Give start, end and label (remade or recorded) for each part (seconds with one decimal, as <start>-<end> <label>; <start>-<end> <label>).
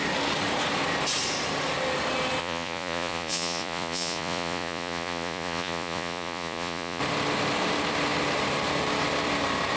0.0-2.4 recorded; 2.4-7.0 remade; 7.0-9.8 recorded